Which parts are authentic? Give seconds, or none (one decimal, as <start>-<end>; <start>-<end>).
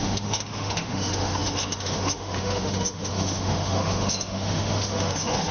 none